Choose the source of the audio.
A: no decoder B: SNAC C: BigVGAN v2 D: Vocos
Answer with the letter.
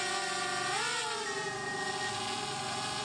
A